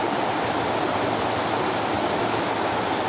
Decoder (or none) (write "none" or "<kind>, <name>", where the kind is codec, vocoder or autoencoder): none